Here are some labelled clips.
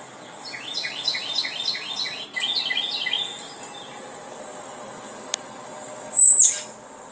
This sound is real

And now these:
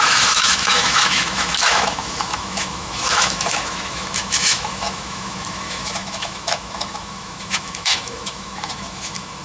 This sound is fake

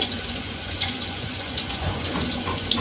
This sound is fake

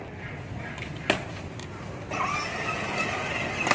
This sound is real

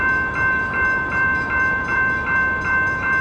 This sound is fake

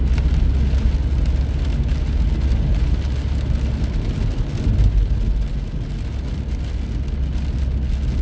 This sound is real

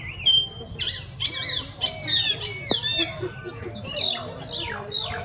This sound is real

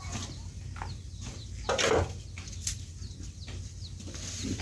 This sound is real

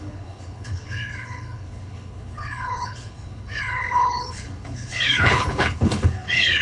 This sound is fake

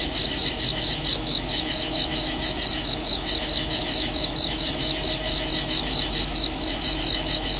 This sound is fake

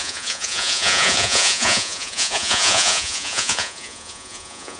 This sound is fake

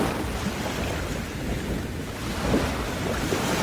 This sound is real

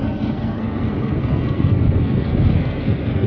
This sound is fake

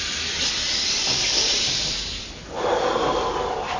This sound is fake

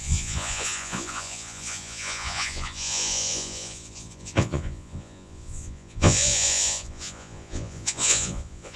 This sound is fake